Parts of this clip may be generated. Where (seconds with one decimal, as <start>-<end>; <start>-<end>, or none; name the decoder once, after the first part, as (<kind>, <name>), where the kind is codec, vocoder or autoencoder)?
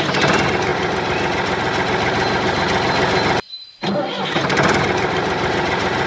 0.0-0.7 (vocoder, BigVGAN v2); 4.4-6.1